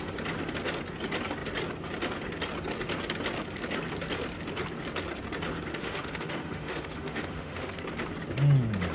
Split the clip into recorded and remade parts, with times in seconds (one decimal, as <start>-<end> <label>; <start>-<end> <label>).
0.0-5.7 recorded; 5.7-7.7 remade; 7.7-8.9 recorded